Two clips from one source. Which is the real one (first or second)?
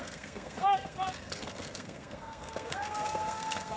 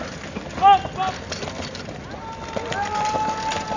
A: second